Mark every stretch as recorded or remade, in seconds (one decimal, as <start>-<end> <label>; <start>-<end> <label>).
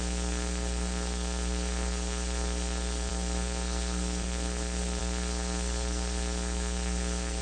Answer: 0.0-7.4 remade